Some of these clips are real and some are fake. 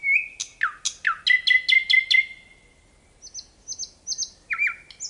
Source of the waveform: real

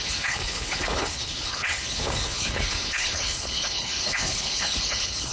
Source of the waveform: fake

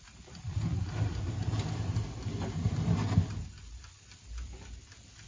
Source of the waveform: real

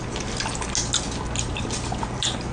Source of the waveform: real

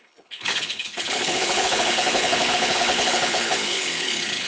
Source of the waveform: fake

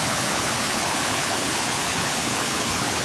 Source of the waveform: fake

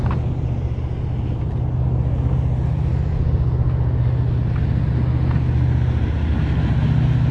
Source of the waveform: real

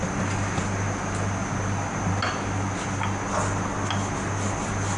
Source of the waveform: real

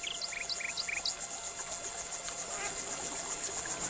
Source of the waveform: real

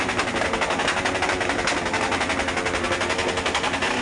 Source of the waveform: real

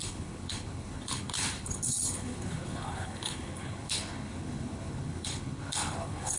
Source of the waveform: fake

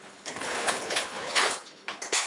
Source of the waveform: fake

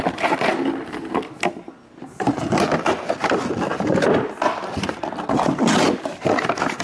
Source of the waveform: real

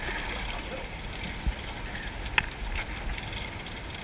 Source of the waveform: real